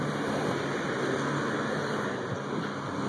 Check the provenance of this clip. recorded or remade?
recorded